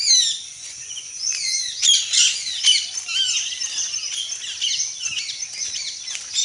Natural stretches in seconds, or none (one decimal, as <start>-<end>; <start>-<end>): 0.0-0.5; 1.9-6.4